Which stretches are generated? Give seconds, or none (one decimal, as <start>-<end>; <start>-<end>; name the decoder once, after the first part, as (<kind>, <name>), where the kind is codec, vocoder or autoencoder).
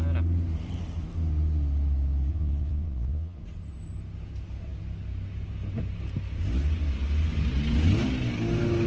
2.3-3.4 (vocoder, Vocos)